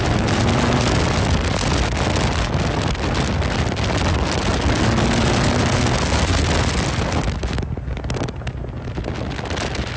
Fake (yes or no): no